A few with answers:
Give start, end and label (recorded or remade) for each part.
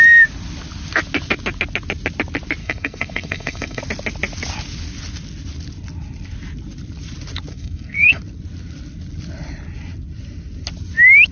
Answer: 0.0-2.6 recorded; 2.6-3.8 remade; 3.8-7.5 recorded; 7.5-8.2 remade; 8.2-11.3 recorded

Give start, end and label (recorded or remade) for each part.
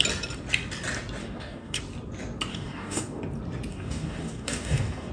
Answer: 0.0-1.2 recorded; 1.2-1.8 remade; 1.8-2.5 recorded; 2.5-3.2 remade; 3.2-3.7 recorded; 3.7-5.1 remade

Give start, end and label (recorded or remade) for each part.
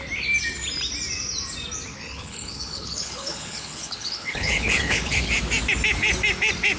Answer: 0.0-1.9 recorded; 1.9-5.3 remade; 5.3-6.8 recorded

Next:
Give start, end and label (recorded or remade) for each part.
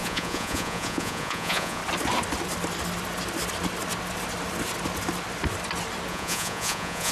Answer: 0.0-1.8 remade; 1.8-6.1 recorded; 6.1-7.1 remade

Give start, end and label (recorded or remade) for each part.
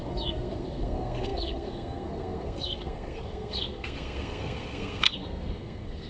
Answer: 0.0-6.1 remade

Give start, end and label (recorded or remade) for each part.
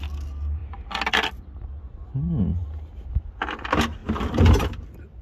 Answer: 0.0-5.2 recorded